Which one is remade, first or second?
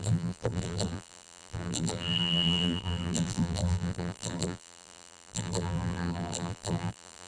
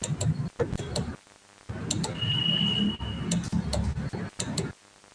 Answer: first